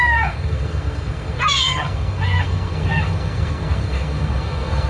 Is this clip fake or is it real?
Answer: fake